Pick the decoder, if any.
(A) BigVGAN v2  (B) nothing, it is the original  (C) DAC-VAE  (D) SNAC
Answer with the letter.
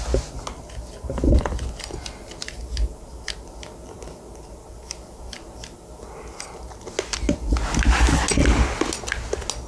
B